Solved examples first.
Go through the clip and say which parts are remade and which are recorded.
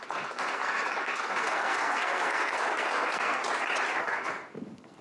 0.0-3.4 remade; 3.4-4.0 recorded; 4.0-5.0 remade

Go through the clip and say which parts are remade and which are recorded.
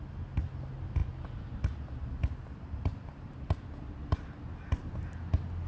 0.0-5.7 recorded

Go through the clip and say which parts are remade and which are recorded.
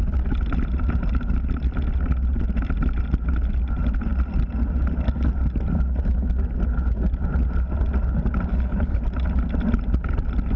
0.0-8.5 recorded; 8.5-9.0 remade; 9.0-10.6 recorded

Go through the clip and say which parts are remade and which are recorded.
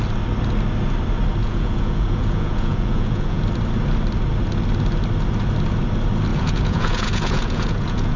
0.0-1.4 recorded; 1.4-3.4 remade; 3.4-6.3 recorded; 6.3-8.2 remade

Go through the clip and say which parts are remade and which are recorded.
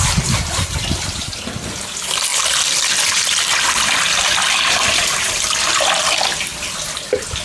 0.0-7.4 remade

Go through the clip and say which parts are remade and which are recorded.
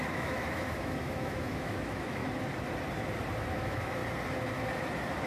0.0-2.2 remade; 2.2-3.5 recorded; 3.5-4.0 remade; 4.0-5.3 recorded